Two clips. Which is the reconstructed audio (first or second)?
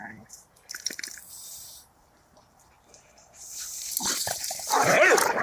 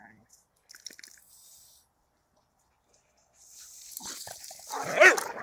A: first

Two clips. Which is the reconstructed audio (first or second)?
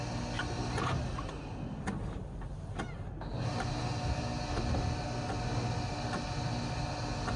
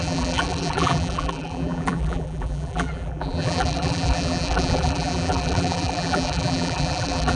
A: second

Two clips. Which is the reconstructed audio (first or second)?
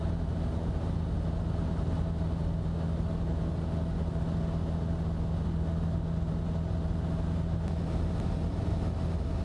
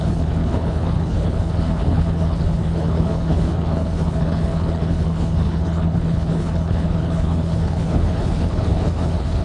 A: second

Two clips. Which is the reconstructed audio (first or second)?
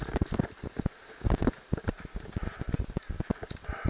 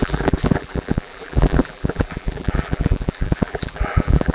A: second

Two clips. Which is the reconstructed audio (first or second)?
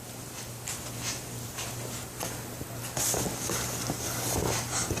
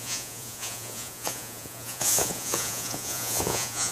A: second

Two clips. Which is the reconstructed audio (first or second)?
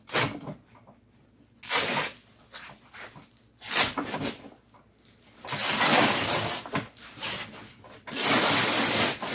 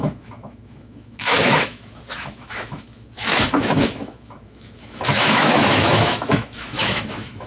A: second